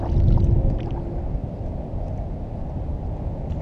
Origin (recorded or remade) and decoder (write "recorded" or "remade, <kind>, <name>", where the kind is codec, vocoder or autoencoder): recorded